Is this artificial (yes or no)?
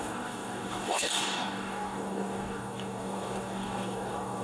yes